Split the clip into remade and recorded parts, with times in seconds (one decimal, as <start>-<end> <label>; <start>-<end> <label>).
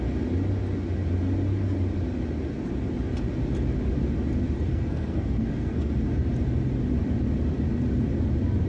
0.0-4.7 recorded; 4.7-5.9 remade; 5.9-8.7 recorded